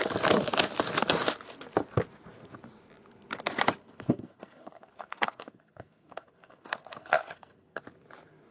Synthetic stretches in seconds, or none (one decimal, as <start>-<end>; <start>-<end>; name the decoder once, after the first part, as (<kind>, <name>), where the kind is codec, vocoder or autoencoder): 3.8-7.8 (codec, SNAC)